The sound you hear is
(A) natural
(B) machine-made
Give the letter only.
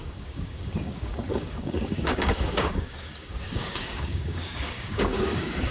B